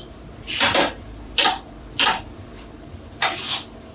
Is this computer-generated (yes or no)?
yes